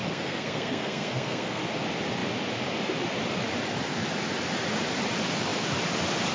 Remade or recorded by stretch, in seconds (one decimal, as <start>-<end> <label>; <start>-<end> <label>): 0.0-1.6 remade; 1.6-6.3 recorded